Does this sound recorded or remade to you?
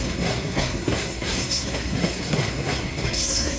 remade